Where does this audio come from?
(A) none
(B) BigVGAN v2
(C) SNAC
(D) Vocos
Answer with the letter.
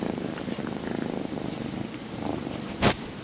B